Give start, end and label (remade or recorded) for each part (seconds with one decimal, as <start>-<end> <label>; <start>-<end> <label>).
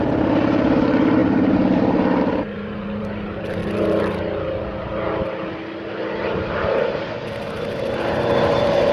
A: 0.0-3.6 remade; 3.6-5.9 recorded; 5.9-8.9 remade